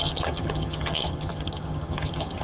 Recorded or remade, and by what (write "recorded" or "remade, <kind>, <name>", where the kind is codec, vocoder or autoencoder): remade, vocoder, HiFi-GAN